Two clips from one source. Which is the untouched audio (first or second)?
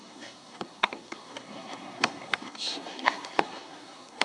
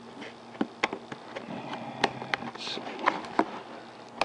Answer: second